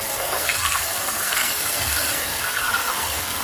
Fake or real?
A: fake